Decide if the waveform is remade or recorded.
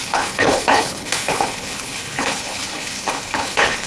remade